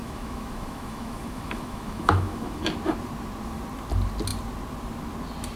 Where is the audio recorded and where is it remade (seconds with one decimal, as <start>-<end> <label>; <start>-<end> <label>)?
0.0-2.6 remade; 2.6-5.6 recorded